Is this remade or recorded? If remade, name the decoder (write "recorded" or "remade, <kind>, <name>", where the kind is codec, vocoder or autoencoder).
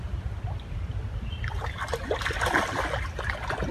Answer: recorded